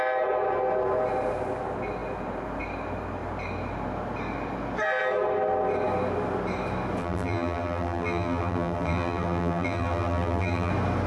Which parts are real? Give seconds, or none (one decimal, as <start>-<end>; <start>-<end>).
0.0-7.0; 10.7-11.1